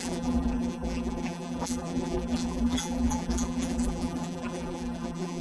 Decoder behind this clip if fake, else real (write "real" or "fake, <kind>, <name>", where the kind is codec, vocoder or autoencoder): fake, vocoder, BigVGAN v2